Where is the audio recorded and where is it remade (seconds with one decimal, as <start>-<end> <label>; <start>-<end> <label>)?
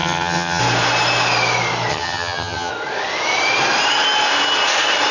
0.0-0.6 remade; 0.6-1.9 recorded; 1.9-2.7 remade; 2.7-5.1 recorded